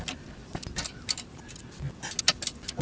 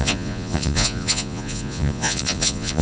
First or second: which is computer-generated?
second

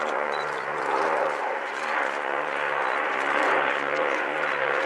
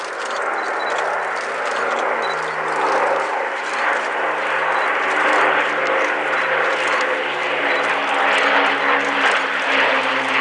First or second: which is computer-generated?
first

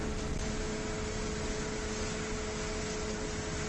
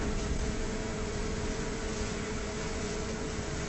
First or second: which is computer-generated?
second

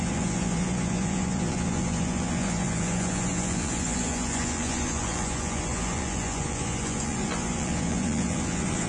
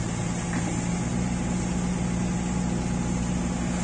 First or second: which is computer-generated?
first